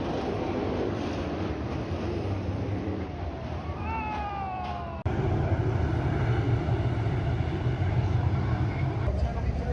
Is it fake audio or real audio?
fake